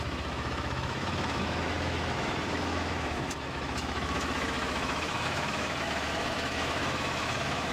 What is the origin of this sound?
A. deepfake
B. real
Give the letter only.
A